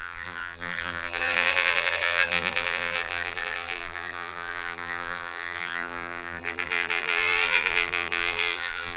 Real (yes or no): no